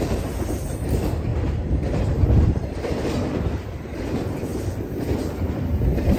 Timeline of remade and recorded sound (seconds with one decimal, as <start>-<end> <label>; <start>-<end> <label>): 0.0-6.2 remade

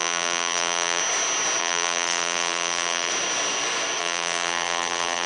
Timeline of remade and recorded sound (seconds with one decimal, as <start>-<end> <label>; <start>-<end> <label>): 0.0-1.0 remade; 1.0-1.6 recorded; 1.6-3.1 remade; 3.1-4.0 recorded; 4.0-5.3 remade

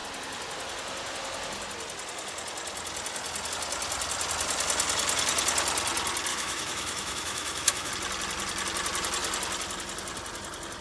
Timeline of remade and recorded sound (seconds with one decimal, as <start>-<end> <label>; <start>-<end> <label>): 0.0-6.3 recorded; 6.3-7.9 remade; 7.9-10.8 recorded

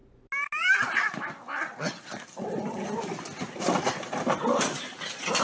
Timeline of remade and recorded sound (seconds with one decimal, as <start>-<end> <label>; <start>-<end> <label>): 0.0-5.4 recorded

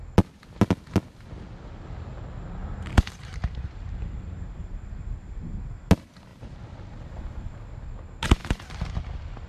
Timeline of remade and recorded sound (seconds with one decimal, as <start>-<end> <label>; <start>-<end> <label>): 0.0-2.6 recorded; 2.6-5.4 remade; 5.4-6.3 recorded; 6.3-7.7 remade; 7.7-8.4 recorded; 8.4-9.0 remade; 9.0-9.5 recorded

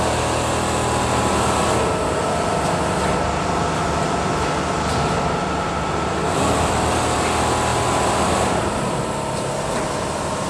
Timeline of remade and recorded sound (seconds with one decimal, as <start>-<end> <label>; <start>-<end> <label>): 0.0-7.7 recorded; 7.7-9.8 remade; 9.8-10.5 recorded